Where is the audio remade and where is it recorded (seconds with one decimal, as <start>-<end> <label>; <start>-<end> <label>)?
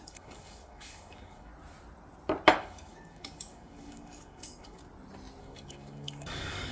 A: 0.0-1.5 remade; 1.5-2.6 recorded; 2.6-4.8 remade; 4.8-5.4 recorded; 5.4-6.7 remade